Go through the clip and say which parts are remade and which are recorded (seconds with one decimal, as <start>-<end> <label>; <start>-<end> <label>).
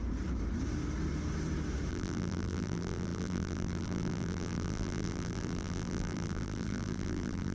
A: 0.0-1.9 recorded; 1.9-7.5 remade